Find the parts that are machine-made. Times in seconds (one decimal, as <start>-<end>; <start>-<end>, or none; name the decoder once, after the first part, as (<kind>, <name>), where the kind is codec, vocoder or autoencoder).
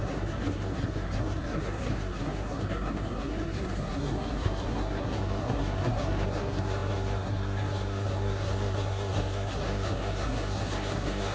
0.0-11.3 (codec, SNAC)